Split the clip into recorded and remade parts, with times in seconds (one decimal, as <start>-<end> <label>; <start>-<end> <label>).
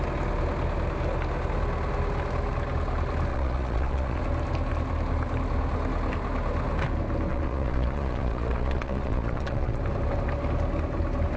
0.0-3.3 recorded; 3.3-4.2 remade; 4.2-7.3 recorded; 7.3-9.8 remade; 9.8-11.4 recorded